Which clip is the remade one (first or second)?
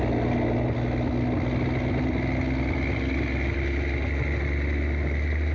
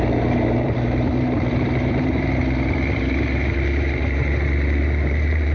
second